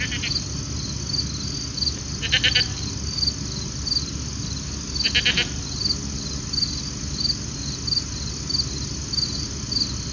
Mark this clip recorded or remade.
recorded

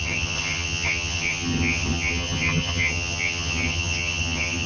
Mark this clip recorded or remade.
remade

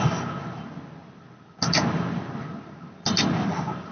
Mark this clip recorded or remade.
recorded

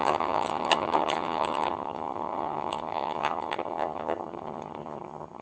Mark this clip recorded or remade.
remade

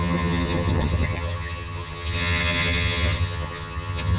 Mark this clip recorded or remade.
remade